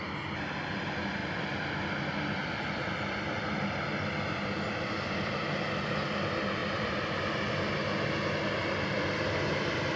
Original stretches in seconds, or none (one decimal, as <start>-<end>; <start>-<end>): 0.0-10.0